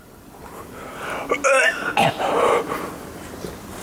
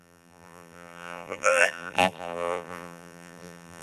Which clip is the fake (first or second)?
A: second